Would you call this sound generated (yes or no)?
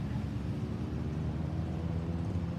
yes